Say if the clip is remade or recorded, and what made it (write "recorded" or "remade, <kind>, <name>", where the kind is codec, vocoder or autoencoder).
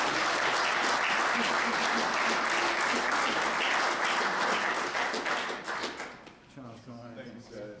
recorded